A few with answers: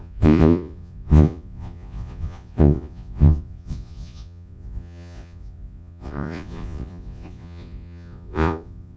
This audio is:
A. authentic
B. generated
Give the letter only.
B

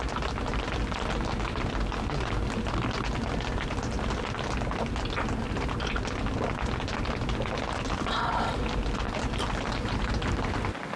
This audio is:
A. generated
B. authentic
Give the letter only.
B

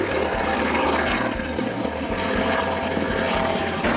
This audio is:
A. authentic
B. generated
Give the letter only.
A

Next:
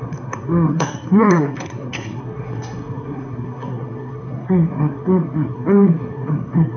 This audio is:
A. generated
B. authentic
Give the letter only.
A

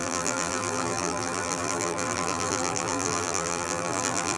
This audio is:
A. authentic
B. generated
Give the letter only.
B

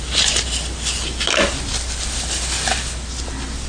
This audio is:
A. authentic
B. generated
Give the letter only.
A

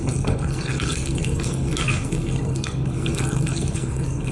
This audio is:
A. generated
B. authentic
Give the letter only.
A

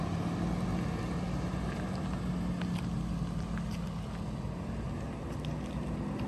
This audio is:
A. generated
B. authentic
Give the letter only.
B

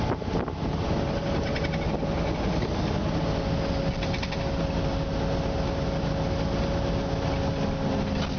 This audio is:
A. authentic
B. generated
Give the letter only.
A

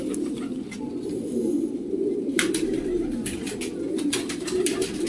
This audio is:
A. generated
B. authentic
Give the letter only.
B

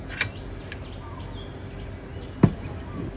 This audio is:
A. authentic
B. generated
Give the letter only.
A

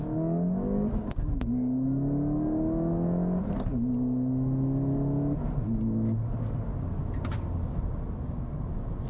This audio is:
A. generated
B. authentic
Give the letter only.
B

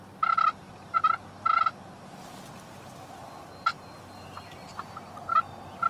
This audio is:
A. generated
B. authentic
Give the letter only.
B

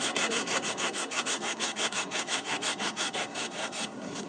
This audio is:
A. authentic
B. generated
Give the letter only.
B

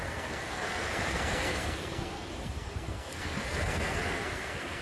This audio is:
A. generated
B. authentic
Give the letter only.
A